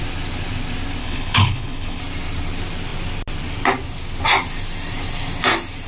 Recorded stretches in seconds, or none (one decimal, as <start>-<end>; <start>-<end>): 0.0-1.0; 2.0-5.9